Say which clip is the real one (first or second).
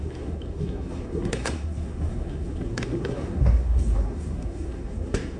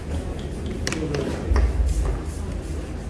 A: second